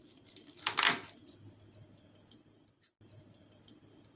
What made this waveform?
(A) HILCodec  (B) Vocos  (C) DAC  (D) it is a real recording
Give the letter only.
D